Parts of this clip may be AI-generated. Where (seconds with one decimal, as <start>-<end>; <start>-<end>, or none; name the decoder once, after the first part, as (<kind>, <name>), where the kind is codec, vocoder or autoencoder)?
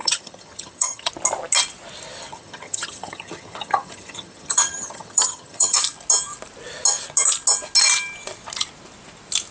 0.0-1.1 (vocoder, HiFi-GAN); 2.3-5.8